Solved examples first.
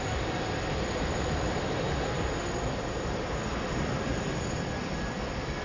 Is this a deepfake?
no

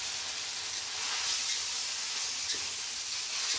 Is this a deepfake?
no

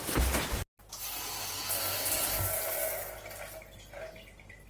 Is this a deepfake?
no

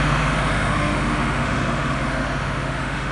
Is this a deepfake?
yes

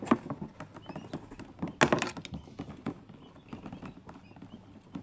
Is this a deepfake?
no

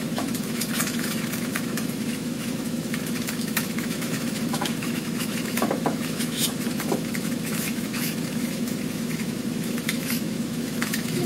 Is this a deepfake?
yes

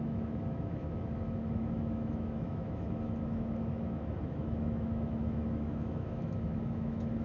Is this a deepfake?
yes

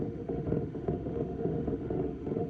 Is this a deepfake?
yes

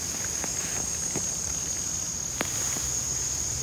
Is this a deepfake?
no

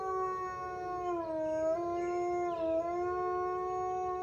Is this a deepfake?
no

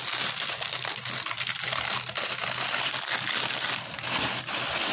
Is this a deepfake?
no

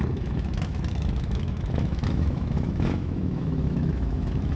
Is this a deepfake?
yes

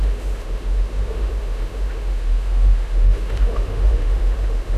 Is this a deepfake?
yes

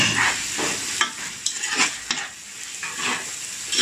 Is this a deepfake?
no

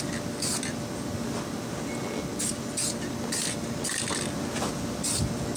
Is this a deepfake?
no